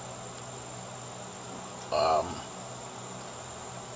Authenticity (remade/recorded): recorded